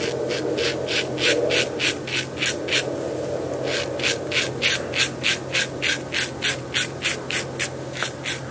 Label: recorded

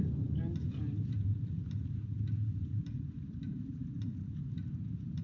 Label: remade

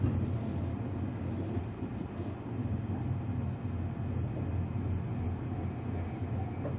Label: recorded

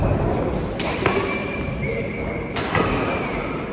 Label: recorded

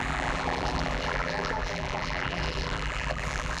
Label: remade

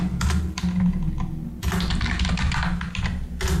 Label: recorded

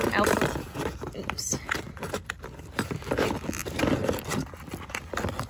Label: remade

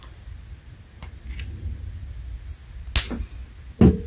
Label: recorded